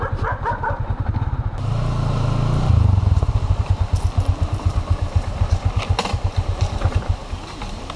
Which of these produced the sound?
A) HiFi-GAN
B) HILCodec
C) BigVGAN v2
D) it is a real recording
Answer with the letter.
C